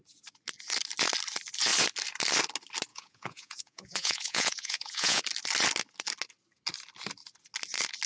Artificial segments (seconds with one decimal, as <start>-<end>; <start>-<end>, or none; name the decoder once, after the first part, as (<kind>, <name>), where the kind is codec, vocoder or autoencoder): 2.9-5.2 (vocoder, Vocos)